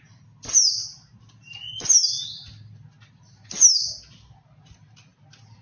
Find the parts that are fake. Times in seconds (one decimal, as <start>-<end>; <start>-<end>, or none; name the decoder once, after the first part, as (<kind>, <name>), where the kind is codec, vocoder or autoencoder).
none